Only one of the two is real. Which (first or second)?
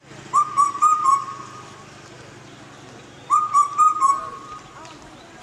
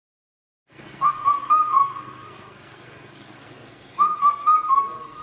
first